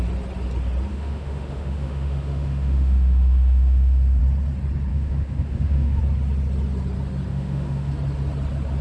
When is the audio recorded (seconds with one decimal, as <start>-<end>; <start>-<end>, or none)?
0.0-0.9; 4.2-4.9; 6.0-7.3; 7.9-8.8